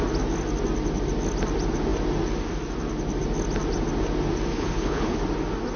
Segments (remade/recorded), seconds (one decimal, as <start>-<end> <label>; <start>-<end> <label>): 0.0-4.5 recorded; 4.5-5.2 remade; 5.2-5.8 recorded